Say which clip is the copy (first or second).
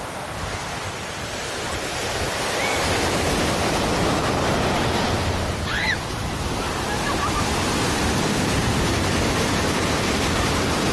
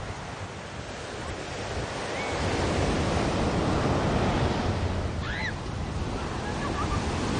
first